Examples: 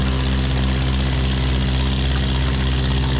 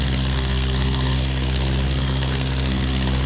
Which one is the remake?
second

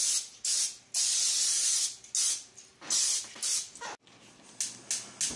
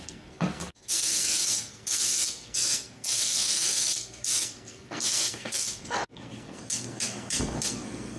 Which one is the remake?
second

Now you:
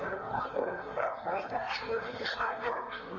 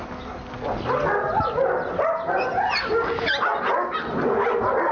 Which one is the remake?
first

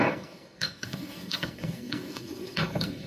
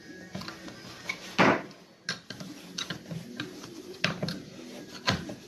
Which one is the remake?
first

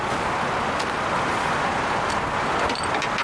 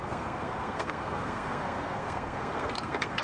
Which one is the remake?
second